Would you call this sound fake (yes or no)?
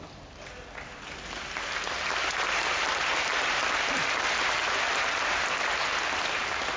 no